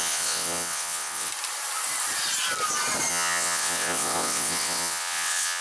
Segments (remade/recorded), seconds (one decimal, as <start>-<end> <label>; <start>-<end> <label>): 0.0-1.3 remade; 1.3-3.1 recorded; 3.1-5.6 remade